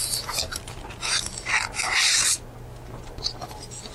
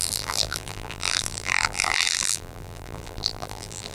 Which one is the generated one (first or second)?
second